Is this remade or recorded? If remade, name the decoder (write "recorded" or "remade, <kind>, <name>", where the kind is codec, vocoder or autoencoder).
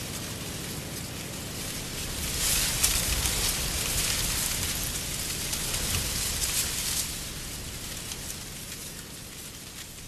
recorded